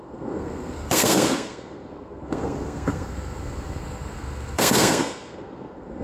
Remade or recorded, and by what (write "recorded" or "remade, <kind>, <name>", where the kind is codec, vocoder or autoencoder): remade, codec, SNAC